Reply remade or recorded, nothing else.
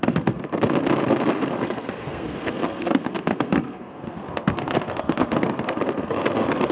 remade